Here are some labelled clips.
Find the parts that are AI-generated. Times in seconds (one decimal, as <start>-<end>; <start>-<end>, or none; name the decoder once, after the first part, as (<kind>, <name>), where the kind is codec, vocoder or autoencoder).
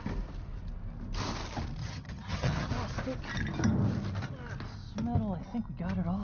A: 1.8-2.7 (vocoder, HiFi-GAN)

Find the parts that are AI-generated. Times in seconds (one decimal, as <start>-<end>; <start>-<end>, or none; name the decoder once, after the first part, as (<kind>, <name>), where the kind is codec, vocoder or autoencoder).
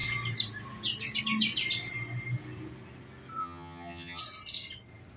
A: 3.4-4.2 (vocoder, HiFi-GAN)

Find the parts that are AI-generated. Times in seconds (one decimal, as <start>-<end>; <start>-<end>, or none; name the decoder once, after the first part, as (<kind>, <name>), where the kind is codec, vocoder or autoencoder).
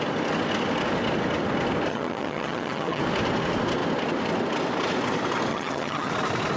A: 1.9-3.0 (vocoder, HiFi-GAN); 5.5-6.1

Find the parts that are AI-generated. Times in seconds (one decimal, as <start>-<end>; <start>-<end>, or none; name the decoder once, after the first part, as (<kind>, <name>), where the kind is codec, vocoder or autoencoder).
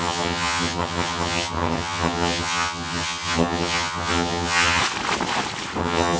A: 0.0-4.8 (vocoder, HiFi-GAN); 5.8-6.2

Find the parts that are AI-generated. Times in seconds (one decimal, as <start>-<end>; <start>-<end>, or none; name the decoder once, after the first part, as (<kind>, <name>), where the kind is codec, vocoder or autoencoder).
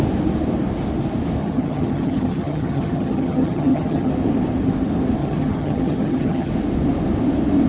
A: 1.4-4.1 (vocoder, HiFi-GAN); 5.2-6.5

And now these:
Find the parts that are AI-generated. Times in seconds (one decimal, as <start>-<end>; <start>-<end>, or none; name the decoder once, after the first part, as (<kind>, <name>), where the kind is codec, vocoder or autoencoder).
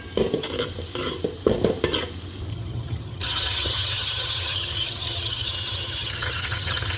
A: 2.5-7.0 (vocoder, HiFi-GAN)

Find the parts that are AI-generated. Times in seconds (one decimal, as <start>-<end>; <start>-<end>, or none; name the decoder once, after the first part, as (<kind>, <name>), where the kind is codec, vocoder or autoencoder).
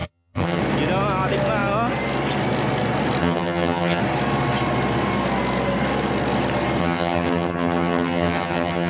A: 0.0-0.6 (vocoder, HiFi-GAN); 3.2-4.0; 6.8-8.9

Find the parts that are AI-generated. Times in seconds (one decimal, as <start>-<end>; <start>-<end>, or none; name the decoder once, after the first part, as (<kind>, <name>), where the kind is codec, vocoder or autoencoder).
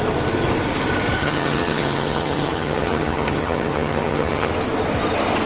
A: 1.2-4.5 (vocoder, HiFi-GAN)